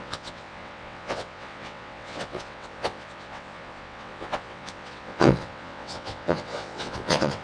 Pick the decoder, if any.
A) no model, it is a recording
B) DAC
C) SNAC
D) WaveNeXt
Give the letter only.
D